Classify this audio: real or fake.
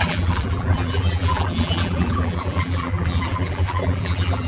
fake